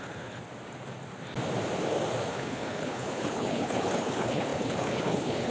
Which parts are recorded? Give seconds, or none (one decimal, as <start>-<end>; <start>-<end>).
0.4-2.3